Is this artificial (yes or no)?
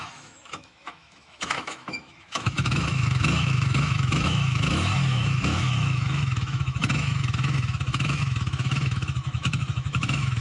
yes